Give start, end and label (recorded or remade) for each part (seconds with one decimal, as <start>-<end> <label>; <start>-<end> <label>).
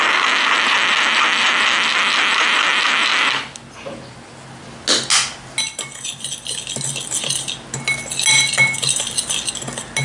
0.0-10.0 recorded